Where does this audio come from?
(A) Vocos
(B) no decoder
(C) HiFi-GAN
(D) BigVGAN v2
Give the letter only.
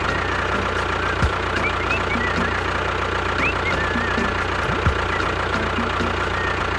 B